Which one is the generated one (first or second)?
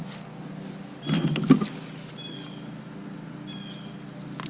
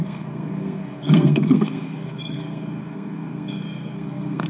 second